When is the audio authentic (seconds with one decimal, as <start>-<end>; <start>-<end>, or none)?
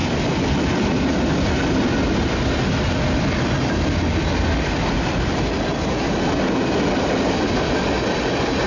0.0-8.7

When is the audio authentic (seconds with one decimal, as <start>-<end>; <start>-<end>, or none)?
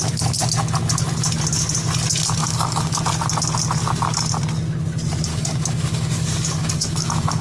0.0-2.4; 3.0-5.3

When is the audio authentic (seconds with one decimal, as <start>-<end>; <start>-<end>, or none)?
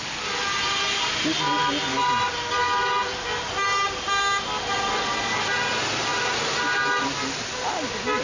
0.0-8.2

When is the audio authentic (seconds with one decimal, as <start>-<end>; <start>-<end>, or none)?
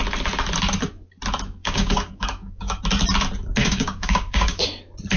0.0-1.6; 2.8-3.6; 4.6-5.2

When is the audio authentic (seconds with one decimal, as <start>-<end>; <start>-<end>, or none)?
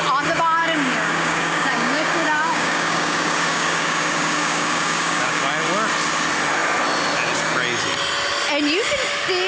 0.0-0.6; 5.4-9.5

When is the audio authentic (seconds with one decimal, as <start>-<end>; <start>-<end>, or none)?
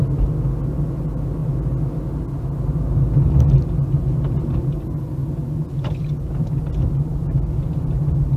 0.0-8.4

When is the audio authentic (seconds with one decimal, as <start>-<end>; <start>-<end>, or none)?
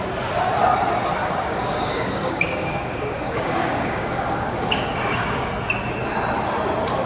0.0-1.2; 5.5-7.1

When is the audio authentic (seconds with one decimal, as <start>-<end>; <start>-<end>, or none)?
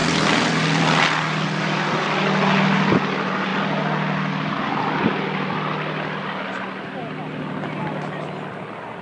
0.0-9.0